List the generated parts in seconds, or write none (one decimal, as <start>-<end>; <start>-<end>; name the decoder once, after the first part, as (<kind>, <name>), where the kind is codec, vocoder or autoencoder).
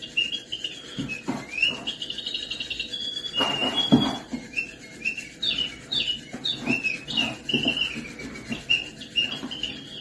none